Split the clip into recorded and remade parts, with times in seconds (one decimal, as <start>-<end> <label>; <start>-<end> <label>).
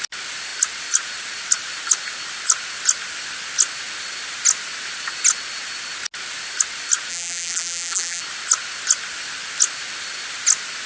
0.0-7.1 recorded; 7.1-8.2 remade; 8.2-10.9 recorded